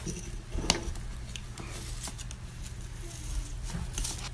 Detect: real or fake real